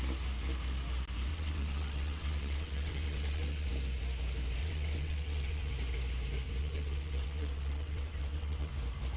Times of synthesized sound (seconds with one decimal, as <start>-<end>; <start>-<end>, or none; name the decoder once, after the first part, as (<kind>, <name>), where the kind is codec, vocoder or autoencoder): 1.3-3.7 (vocoder, WaveNeXt); 4.6-5.7; 6.6-8.7